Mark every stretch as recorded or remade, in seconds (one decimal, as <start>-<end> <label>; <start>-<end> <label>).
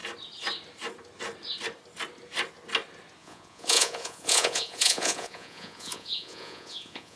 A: 0.0-3.2 recorded; 3.2-7.2 remade